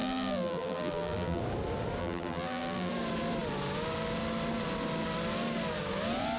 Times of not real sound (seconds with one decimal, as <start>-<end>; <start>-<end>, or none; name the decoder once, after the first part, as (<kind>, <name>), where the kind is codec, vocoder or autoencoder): 0.0-1.4 (vocoder, BigVGAN v2); 2.0-2.9